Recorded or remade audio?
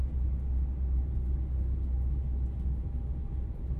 recorded